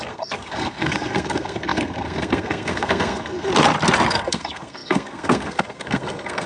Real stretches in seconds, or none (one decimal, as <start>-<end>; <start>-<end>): 3.5-4.1